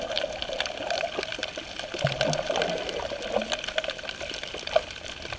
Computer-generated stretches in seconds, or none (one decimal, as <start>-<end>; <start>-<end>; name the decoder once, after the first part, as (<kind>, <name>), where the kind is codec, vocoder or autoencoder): none

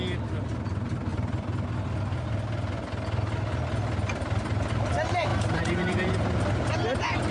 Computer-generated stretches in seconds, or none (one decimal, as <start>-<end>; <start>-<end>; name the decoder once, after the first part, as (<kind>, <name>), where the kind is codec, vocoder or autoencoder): 5.3-6.1 (vocoder, BigVGAN v2)

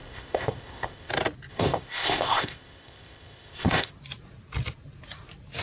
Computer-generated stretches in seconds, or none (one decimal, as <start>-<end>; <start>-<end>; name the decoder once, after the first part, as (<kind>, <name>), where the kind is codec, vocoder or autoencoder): 0.0-1.1 (codec, ZipCodec); 1.5-3.9

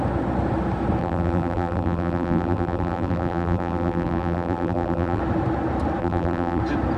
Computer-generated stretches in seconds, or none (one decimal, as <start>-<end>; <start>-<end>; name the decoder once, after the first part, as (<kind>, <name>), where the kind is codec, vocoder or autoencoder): 1.0-5.2 (vocoder, BigVGAN v2); 6.0-6.6

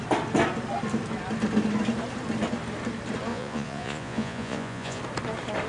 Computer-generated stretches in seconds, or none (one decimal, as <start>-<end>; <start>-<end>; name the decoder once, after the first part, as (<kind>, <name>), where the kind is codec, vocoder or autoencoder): 3.3-5.0 (vocoder, Vocos)

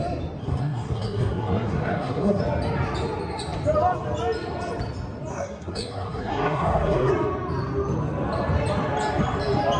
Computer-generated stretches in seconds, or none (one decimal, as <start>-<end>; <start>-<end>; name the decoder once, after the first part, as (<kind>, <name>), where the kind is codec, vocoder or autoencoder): 0.4-2.4 (codec, SNAC); 5.3-7.1